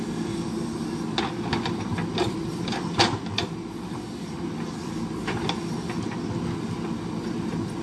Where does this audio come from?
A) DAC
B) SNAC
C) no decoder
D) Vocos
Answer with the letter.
C